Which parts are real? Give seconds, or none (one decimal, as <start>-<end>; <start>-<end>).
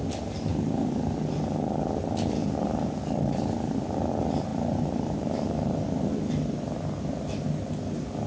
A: 0.0-0.5; 1.4-2.4; 4.1-4.5; 6.2-8.3